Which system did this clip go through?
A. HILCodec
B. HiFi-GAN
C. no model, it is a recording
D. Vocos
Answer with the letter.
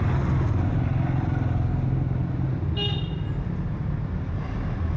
C